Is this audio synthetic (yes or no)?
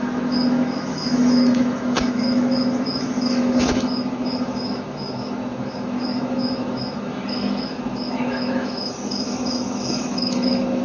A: yes